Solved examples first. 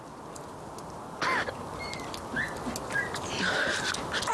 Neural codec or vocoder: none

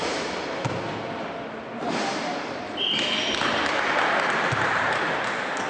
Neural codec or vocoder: none